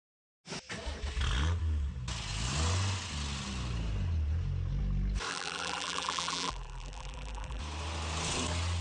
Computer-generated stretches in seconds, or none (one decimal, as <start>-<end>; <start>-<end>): 5.3-7.6